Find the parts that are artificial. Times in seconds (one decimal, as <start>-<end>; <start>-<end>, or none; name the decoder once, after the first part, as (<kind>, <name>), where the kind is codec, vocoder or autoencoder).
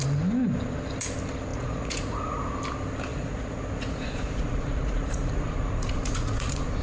1.5-2.5 (vocoder, Vocos); 3.1-6.8